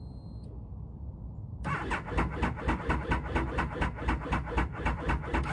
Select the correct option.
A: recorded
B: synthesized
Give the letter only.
A